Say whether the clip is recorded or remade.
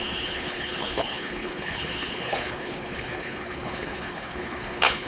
remade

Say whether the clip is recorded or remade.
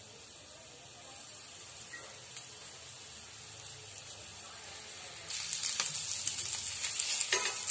recorded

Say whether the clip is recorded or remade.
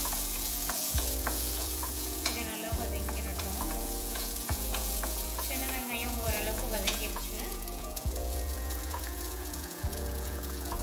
remade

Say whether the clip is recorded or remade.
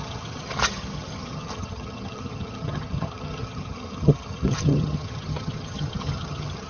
remade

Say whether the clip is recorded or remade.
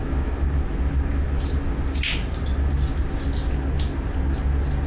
recorded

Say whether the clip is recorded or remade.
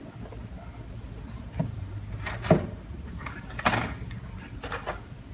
recorded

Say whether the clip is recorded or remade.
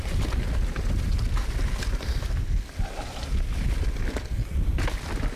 recorded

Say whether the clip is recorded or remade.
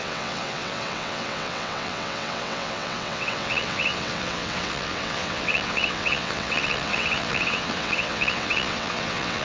remade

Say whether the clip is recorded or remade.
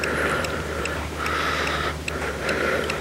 remade